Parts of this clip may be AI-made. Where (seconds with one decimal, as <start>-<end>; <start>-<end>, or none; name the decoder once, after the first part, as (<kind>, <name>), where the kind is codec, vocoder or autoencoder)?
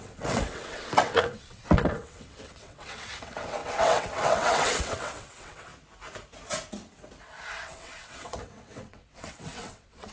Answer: 0.0-5.7 (vocoder, WaveNeXt); 7.5-10.1